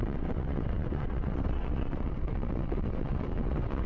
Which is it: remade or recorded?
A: remade